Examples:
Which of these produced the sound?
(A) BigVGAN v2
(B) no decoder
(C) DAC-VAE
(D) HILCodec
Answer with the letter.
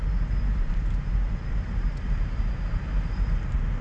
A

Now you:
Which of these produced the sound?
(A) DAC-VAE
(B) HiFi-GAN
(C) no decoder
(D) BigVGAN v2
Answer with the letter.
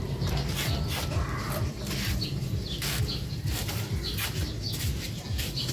D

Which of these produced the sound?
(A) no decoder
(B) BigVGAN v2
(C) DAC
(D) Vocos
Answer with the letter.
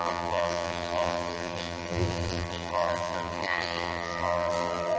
B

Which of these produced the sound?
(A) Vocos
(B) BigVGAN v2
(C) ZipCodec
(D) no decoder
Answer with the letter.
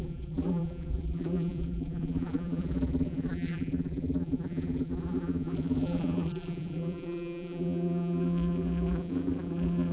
B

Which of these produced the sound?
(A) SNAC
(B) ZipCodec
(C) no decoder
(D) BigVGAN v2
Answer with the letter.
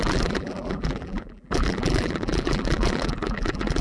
D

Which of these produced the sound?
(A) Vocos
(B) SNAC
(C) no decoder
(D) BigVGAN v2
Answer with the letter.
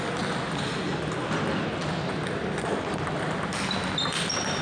C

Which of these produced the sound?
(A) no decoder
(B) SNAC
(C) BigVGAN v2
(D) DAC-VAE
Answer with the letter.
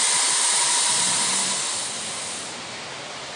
A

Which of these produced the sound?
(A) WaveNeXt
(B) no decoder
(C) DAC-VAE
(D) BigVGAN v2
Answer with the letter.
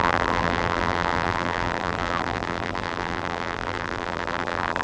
D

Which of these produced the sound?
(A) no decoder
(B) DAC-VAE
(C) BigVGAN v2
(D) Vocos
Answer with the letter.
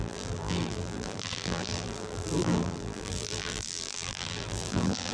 C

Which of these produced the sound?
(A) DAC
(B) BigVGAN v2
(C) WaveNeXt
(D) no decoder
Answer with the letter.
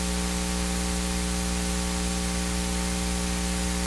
D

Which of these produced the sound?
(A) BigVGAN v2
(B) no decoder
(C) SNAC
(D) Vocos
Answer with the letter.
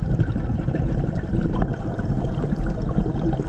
B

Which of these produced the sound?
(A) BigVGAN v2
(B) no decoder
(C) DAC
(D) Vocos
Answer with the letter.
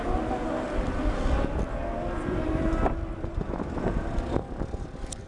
B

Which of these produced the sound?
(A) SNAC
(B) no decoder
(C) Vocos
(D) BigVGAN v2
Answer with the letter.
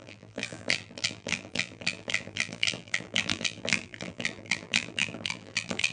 D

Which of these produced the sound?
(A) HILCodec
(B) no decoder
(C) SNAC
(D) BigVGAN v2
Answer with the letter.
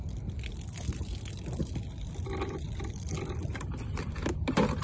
B